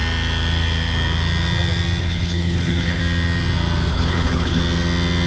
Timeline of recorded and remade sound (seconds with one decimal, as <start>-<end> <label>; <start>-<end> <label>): 0.0-2.0 recorded; 2.0-3.0 remade; 3.0-3.9 recorded; 3.9-4.6 remade; 4.6-5.3 recorded